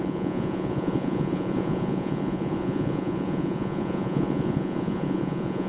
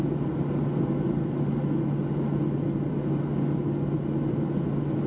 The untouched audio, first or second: second